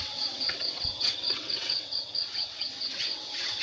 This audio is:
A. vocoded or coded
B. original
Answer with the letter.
A